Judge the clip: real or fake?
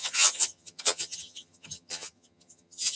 fake